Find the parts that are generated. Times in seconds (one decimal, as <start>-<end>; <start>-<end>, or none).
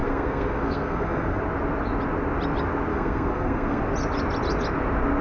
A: 0.0-1.4; 2.9-3.8